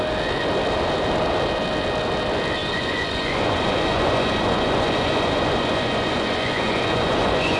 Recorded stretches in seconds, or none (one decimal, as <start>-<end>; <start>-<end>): 0.0-2.6